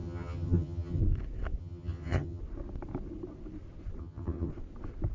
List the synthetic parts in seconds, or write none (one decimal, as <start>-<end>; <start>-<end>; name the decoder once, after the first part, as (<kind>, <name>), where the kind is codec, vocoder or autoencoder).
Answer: 0.0-1.0 (vocoder, HiFi-GAN); 1.6-2.4; 4.0-4.5